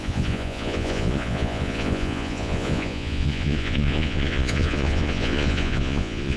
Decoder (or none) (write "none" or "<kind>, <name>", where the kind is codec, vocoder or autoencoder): vocoder, Vocos